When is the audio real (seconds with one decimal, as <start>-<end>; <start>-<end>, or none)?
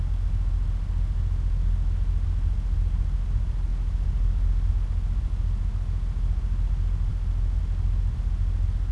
0.0-8.9